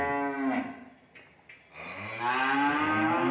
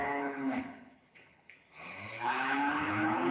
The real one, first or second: first